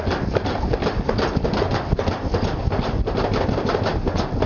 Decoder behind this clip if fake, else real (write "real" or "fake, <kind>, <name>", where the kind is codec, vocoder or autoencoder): real